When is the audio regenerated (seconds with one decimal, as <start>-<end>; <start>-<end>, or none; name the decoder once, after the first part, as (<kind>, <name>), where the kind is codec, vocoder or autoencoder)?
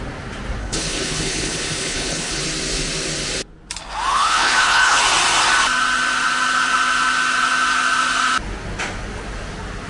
0.6-2.4 (codec, HILCodec); 4.1-5.0